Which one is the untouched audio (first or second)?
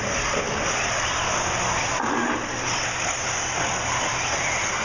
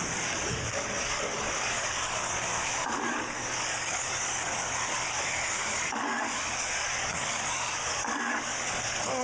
first